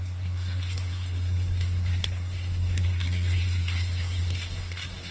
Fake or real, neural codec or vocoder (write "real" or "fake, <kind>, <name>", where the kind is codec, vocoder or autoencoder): fake, codec, SNAC